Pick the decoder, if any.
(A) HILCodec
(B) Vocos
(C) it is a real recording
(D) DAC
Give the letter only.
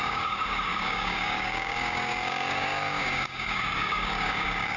D